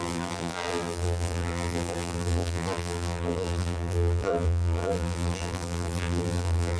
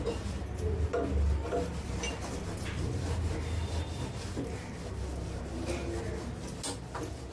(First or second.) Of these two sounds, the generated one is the first